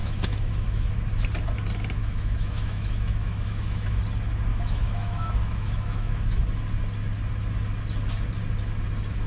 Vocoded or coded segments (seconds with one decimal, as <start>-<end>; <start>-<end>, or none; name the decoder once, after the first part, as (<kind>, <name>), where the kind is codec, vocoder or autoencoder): 0.0-0.9 (autoencoder, DAC-VAE); 2.0-4.0; 4.5-6.4